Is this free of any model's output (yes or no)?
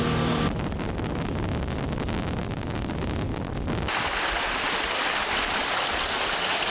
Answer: no